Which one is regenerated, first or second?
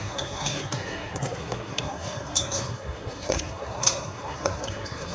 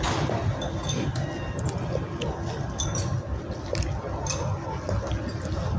first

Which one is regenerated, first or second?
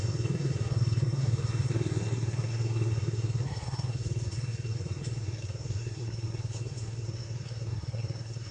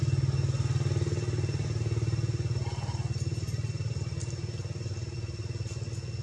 first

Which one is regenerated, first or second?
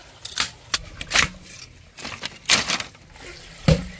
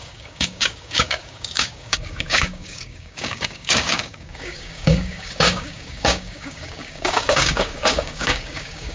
second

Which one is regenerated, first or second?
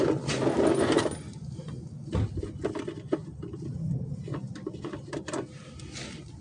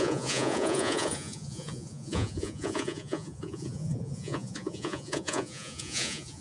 second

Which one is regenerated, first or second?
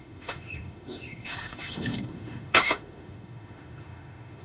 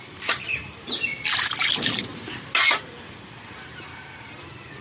first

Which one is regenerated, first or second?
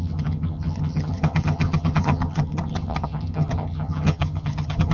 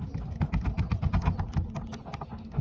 first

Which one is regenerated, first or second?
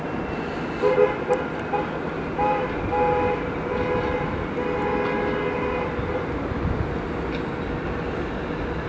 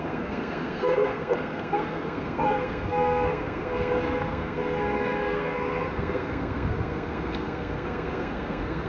second